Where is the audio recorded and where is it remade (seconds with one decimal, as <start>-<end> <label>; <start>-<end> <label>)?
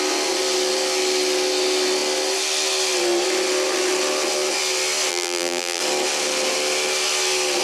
0.0-5.1 recorded; 5.1-5.8 remade; 5.8-7.6 recorded